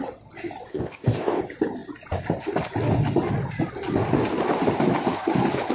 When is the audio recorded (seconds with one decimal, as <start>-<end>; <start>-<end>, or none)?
0.0-0.7; 1.4-5.7